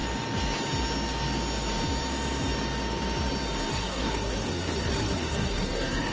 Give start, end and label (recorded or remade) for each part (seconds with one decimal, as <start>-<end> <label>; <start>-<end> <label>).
0.0-3.7 recorded; 3.7-6.1 remade